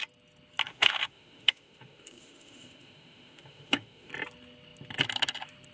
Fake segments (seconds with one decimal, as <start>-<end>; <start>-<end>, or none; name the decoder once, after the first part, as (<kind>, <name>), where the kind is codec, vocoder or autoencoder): 0.7-4.1 (autoencoder, DAC-VAE)